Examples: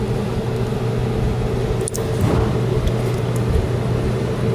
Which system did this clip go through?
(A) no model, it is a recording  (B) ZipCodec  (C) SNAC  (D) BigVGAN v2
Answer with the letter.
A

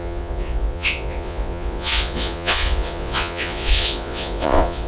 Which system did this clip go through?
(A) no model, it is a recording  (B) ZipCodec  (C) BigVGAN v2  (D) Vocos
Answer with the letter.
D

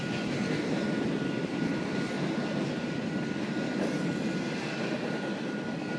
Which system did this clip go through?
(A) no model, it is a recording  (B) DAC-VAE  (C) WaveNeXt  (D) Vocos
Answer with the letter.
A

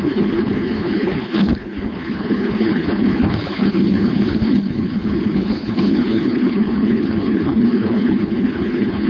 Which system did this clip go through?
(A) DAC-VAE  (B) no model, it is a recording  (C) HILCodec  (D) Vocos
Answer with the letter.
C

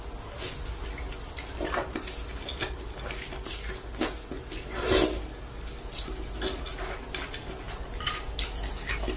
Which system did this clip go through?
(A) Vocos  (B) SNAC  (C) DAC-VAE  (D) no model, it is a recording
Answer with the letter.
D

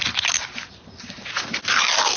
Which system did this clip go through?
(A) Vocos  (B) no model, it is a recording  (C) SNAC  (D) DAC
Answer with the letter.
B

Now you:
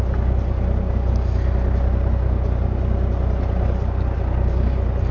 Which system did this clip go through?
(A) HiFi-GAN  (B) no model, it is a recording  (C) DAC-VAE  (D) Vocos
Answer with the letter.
B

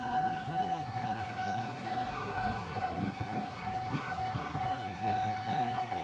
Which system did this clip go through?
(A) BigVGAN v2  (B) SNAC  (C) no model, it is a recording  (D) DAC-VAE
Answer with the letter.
B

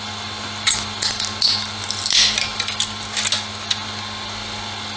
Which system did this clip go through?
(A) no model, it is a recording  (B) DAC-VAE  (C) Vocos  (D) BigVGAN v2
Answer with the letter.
A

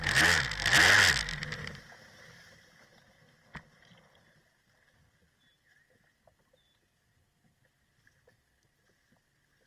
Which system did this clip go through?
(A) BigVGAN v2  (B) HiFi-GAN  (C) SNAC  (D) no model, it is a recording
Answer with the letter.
D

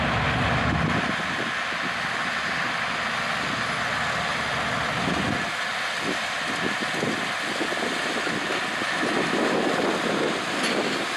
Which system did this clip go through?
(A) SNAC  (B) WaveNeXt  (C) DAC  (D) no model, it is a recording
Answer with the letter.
D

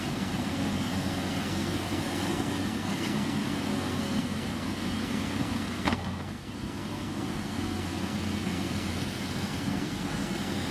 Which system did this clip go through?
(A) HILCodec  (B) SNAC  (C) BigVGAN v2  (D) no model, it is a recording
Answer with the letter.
B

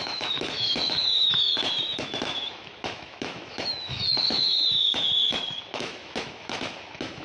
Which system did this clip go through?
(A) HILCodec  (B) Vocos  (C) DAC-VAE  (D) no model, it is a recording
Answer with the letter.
C